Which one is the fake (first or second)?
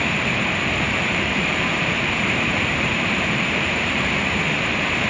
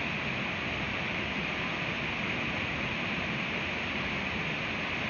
first